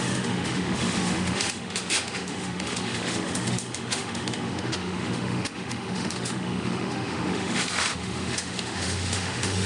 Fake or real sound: fake